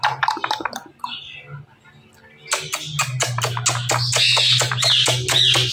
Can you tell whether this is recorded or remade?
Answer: recorded